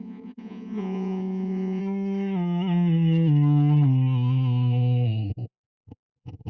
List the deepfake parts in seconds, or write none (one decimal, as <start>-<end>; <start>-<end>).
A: 0.0-1.8; 5.3-6.5

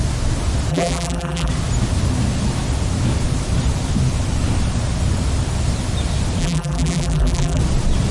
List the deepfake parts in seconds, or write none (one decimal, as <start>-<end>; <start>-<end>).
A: 0.7-1.5; 6.4-7.6